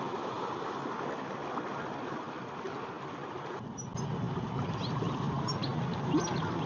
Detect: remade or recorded recorded